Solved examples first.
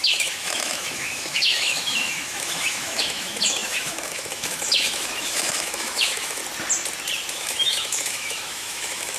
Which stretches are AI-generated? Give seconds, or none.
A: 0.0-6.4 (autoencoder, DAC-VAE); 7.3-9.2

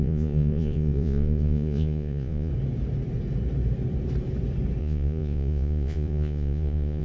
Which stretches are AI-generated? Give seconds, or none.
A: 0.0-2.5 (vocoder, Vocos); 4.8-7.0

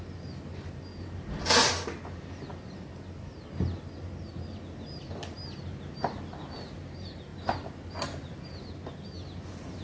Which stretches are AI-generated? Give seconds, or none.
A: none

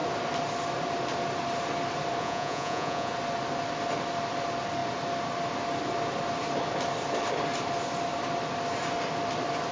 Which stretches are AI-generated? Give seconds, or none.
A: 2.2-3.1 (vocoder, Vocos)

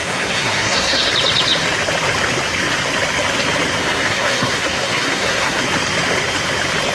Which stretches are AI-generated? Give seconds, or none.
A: 0.0-1.1 (codec, SNAC); 3.8-5.6

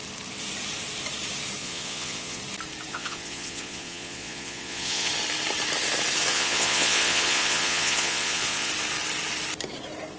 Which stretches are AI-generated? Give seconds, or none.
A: 1.6-2.4 (vocoder, Vocos); 2.9-5.1; 6.3-8.7

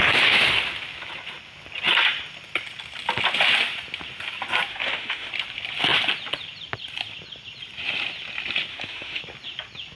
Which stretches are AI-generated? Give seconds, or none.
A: 4.7-5.3 (autoencoder, DAC-VAE); 8.7-9.2